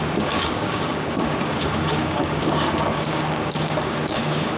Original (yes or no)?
no